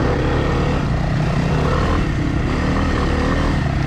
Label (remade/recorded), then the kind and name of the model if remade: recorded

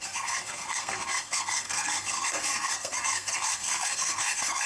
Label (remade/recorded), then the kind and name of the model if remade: remade, codec, SNAC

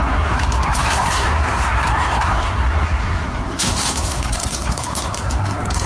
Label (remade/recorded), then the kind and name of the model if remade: remade, codec, SNAC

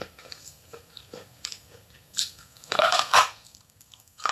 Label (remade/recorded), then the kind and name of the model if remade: remade, codec, SNAC